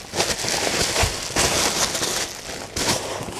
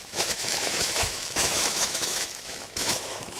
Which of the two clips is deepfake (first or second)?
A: second